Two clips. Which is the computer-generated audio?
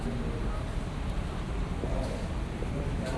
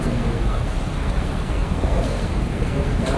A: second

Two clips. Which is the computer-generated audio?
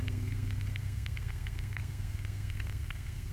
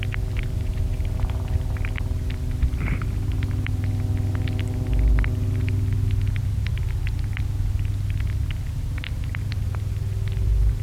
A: first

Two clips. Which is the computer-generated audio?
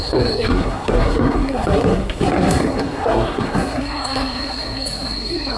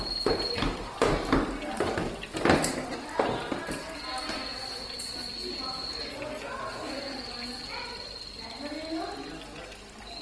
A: first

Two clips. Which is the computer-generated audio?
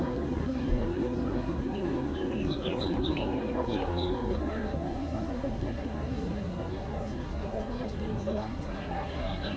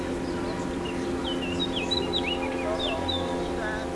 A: first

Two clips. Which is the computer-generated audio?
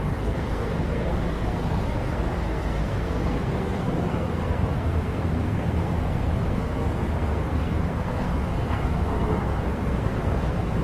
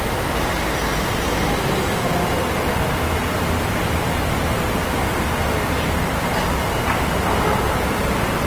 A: first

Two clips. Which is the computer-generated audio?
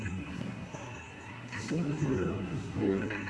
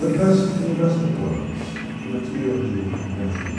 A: first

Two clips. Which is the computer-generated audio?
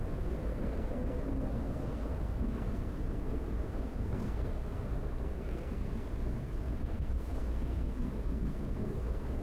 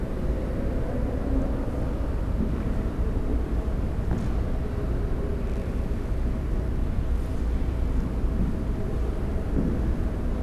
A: first